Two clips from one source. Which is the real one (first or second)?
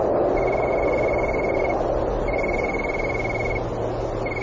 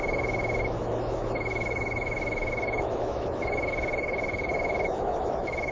first